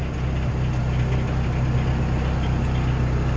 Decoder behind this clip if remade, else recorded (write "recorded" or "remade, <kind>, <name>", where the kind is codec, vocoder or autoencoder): recorded